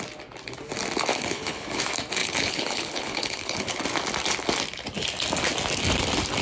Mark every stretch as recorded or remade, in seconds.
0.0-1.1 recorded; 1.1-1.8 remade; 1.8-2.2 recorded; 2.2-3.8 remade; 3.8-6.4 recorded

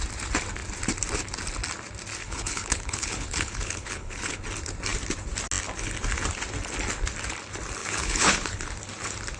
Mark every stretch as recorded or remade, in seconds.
0.0-2.2 recorded; 2.2-4.4 remade; 4.4-7.8 recorded; 7.8-8.6 remade; 8.6-9.4 recorded